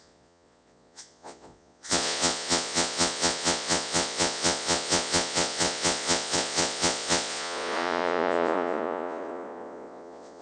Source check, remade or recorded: remade